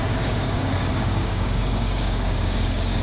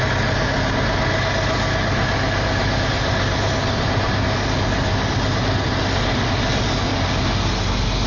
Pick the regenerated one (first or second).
first